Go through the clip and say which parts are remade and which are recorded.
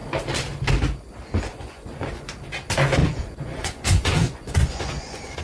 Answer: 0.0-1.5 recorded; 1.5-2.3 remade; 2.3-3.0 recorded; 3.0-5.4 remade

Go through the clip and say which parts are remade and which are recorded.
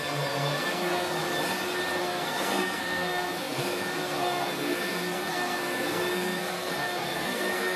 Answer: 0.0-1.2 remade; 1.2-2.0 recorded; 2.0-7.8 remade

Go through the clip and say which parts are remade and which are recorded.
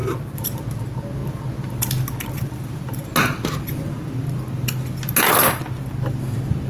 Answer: 0.0-6.7 recorded